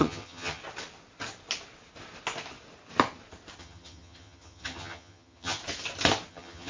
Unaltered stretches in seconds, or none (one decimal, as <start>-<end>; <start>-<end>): 0.6-3.6; 5.6-6.3